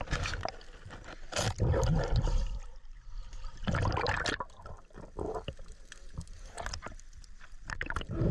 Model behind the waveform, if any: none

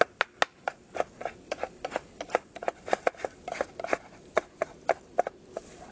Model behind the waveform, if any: none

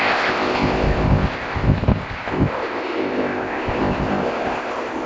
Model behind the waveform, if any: codec, ZipCodec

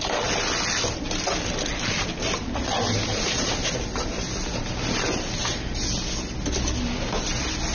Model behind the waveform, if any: none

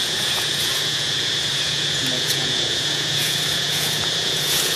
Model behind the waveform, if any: vocoder, Vocos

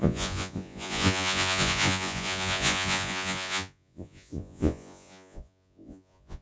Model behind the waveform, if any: vocoder, Vocos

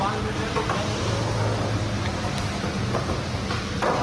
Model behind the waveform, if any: none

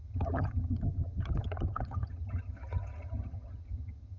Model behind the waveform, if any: vocoder, HiFi-GAN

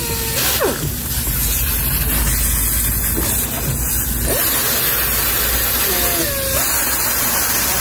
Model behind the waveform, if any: none